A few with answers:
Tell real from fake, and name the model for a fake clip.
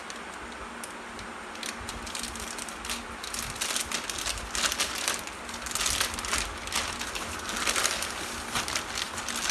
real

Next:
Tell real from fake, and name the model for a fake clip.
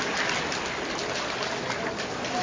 real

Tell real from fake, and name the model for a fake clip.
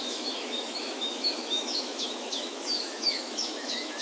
fake, autoencoder, DAC-VAE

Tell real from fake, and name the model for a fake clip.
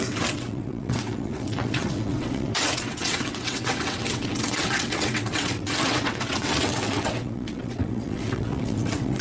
fake, vocoder, WaveNeXt